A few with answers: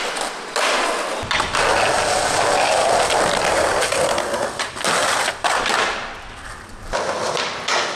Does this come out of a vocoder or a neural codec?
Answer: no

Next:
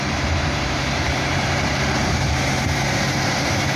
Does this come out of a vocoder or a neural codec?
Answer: yes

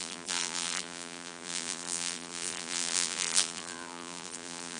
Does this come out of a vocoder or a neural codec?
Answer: yes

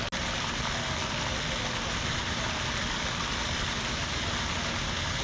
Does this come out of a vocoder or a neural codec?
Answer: no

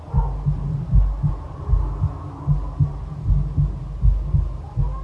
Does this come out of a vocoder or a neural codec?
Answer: no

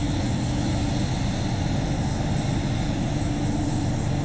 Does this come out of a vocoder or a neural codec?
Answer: no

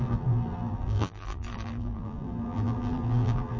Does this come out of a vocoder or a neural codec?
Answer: yes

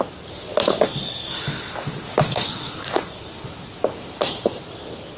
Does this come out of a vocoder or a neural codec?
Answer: no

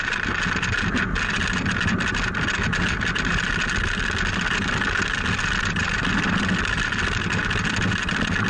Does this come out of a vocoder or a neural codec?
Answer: no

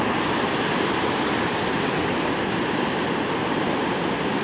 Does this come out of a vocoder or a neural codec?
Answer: no